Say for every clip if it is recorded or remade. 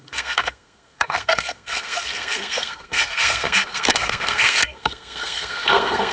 remade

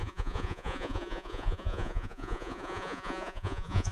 remade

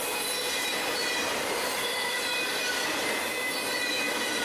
recorded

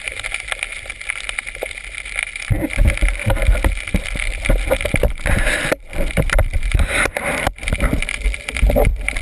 remade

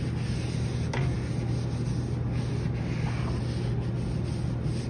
recorded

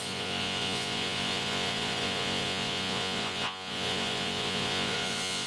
remade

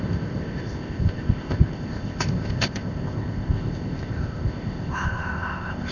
remade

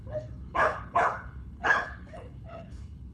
remade